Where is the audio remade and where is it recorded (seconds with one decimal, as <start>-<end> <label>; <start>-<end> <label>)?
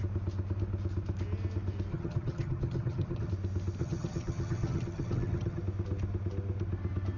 0.0-1.9 recorded; 1.9-3.3 remade; 3.3-3.8 recorded; 3.8-5.6 remade; 5.6-7.2 recorded